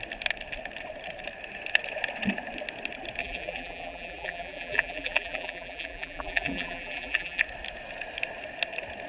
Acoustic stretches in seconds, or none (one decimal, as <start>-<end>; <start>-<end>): 0.0-3.2; 7.4-9.1